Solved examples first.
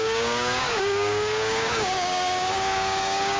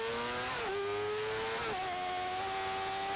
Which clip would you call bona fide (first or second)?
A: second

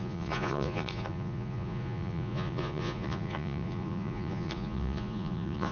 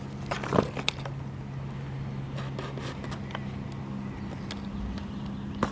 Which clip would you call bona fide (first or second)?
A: second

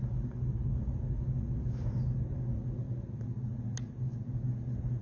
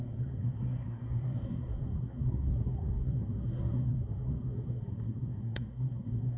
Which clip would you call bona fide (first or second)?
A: first